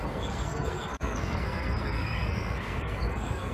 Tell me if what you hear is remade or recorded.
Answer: remade